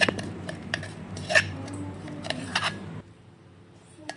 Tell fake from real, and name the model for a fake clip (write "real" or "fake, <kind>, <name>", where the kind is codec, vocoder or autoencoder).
fake, vocoder, BigVGAN v2